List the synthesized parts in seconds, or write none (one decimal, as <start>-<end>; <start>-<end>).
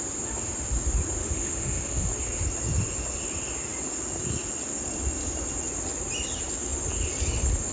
1.2-2.1